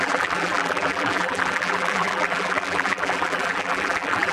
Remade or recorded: remade